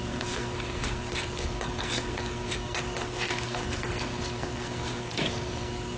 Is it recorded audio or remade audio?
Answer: remade